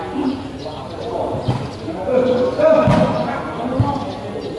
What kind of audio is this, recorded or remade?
recorded